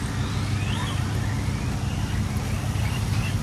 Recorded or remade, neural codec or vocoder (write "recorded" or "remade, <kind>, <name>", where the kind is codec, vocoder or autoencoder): recorded